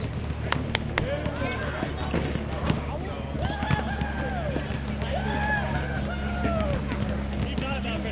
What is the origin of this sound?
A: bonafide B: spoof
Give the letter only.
A